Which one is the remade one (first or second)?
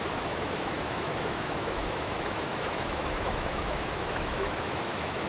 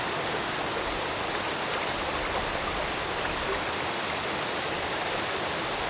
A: first